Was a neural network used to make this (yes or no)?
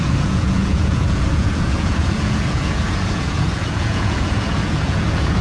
yes